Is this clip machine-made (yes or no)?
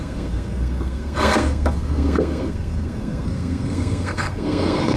yes